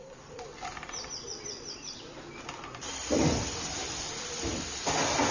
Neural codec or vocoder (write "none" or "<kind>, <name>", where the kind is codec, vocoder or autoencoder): vocoder, BigVGAN v2